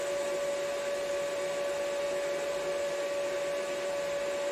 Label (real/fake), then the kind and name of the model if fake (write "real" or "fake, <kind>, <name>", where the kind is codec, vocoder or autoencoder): real